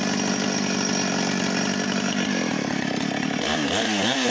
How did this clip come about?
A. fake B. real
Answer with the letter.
B